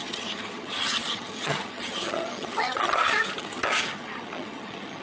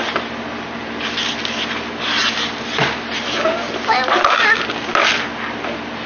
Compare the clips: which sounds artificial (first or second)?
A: first